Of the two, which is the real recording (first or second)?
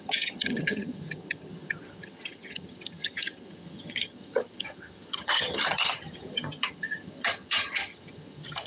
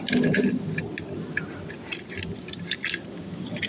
second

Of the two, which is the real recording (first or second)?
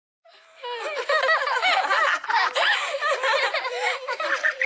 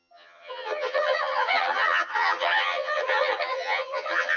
first